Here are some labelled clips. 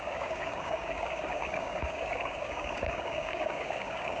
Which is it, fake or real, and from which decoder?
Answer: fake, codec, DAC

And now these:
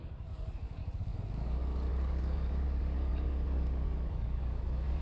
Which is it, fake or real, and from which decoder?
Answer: fake, codec, DAC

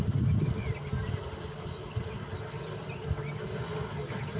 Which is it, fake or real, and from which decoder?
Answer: real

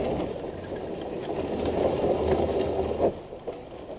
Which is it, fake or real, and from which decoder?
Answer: real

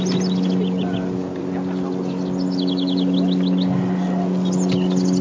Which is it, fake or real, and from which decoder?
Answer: real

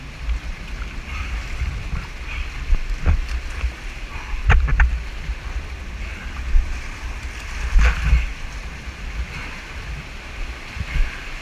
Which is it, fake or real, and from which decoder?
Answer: real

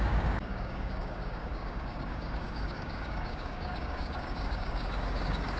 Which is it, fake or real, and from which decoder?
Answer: fake, codec, DAC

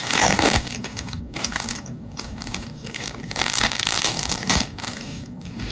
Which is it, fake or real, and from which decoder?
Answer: fake, codec, DAC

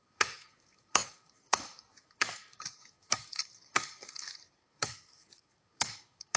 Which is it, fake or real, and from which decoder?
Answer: fake, codec, DAC